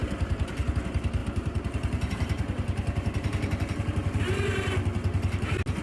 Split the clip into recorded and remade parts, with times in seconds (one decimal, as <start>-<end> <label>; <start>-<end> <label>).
0.0-0.7 remade; 0.7-1.2 recorded; 1.2-4.2 remade; 4.2-5.8 recorded